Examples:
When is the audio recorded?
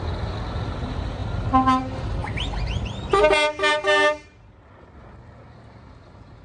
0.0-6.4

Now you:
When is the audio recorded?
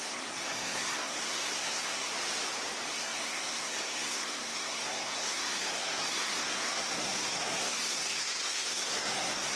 2.1-2.9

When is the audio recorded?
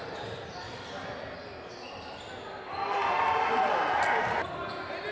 0.0-5.1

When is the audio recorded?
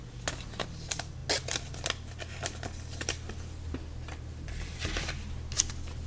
0.0-6.1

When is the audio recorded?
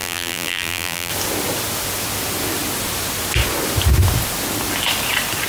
1.1-5.5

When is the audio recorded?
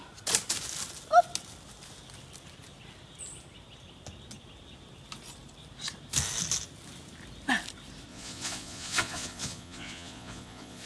0.0-8.1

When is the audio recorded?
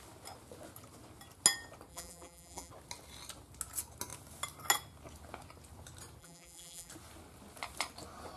0.0-1.9; 2.7-6.2; 6.9-8.4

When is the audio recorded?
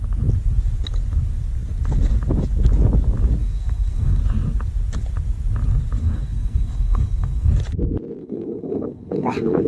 0.0-3.4; 4.2-6.0; 7.5-8.2